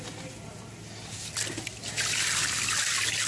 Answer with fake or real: real